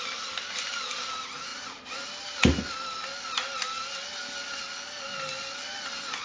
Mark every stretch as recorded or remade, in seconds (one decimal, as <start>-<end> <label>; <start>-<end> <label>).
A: 0.0-6.2 recorded